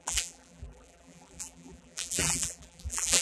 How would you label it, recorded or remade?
remade